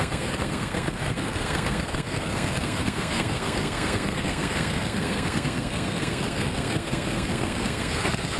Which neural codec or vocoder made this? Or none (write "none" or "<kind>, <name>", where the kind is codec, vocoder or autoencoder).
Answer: codec, SNAC